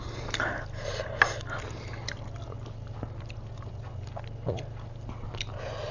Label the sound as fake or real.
real